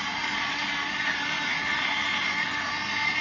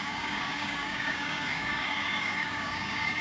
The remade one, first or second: second